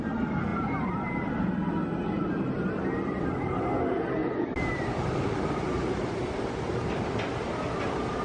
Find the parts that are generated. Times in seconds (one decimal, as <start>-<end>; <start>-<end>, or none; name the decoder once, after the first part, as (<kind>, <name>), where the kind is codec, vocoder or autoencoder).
0.5-1.3 (vocoder, BigVGAN v2); 4.2-7.2